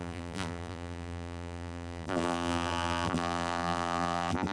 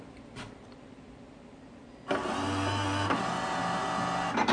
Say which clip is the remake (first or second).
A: first